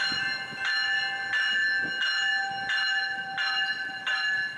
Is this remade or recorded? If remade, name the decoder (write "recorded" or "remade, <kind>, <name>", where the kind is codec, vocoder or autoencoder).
recorded